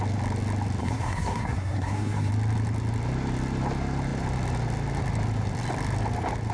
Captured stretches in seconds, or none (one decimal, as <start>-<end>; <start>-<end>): 0.0-0.8; 2.3-6.5